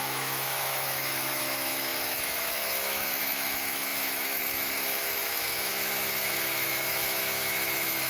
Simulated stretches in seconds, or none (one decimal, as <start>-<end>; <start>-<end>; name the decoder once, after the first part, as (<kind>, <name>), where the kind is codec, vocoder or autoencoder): 0.0-8.1 (autoencoder, DAC-VAE)